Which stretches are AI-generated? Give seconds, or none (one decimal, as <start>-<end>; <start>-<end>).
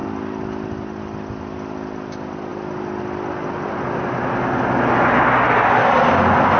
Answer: none